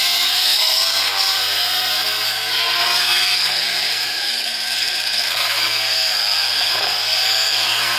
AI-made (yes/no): yes